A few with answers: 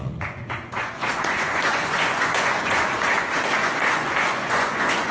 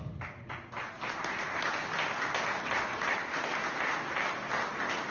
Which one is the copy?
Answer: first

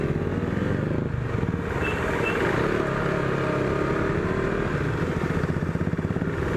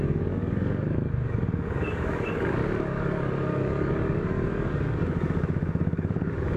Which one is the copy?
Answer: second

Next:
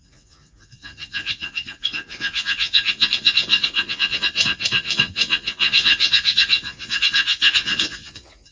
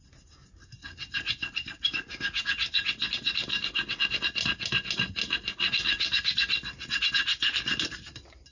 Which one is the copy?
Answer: first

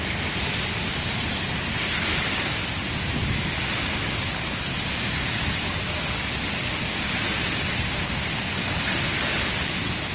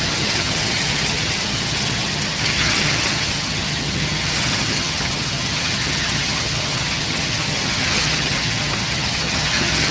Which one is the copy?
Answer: second